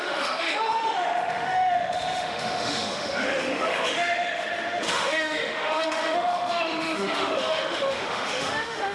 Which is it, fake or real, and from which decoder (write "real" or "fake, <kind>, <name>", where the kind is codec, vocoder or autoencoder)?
fake, autoencoder, DAC-VAE